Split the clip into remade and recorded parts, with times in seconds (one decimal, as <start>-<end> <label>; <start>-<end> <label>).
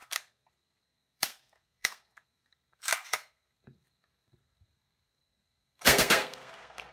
0.0-6.9 remade